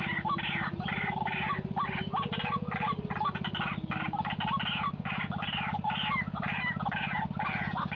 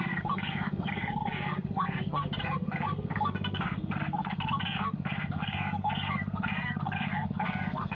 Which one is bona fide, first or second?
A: first